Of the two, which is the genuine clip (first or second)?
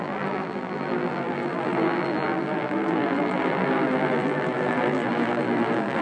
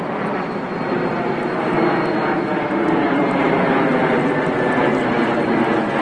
second